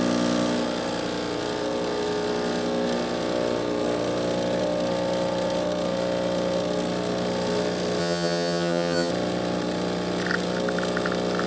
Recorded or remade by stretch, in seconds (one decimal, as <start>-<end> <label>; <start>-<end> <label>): 0.0-8.0 recorded; 8.0-9.1 remade; 9.1-11.5 recorded